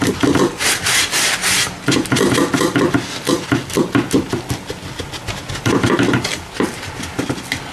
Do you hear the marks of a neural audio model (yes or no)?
no